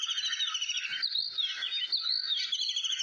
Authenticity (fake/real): real